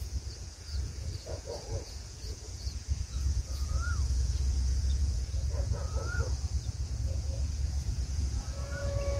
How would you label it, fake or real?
fake